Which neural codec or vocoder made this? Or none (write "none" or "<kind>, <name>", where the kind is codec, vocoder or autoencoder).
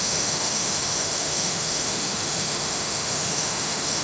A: autoencoder, DAC-VAE